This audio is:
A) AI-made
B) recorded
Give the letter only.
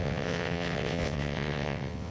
A